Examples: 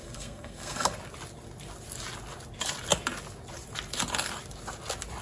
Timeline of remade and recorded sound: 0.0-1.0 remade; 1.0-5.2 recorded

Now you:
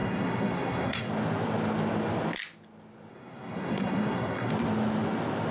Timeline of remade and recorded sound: 0.0-1.1 remade; 1.1-3.1 recorded; 3.1-4.5 remade; 4.5-5.5 recorded